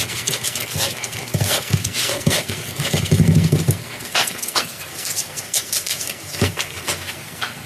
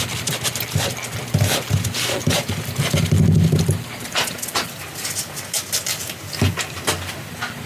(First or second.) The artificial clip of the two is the first